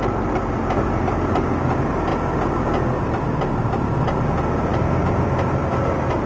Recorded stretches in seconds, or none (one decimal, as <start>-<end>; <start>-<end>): 0.0-6.3